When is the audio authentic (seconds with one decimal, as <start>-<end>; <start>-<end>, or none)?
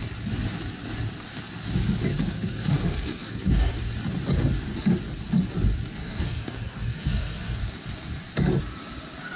0.0-2.1; 3.8-5.9; 7.6-9.4